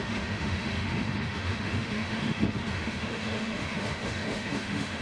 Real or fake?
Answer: fake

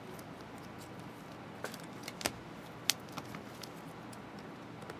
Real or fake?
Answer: real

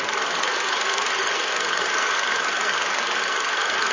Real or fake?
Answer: fake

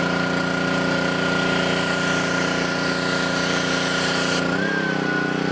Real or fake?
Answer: real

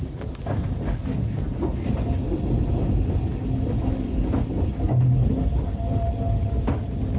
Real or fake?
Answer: real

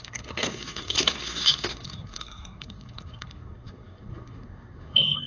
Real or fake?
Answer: fake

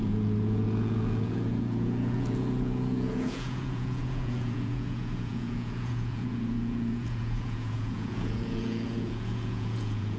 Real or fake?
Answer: fake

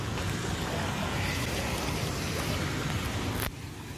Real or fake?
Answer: real